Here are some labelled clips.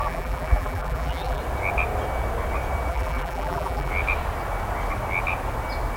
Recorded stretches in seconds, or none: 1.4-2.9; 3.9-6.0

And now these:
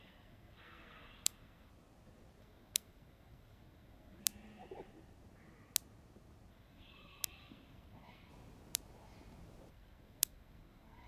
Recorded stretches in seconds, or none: 1.7-2.4; 4.2-6.5; 8.3-9.7

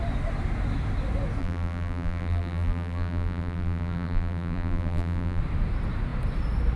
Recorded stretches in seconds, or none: 0.0-1.4; 5.4-6.8

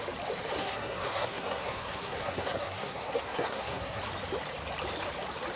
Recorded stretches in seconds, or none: 0.0-0.6; 4.0-5.6

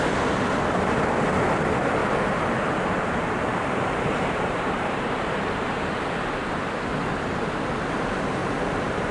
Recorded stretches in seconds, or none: 0.0-2.0; 6.3-8.4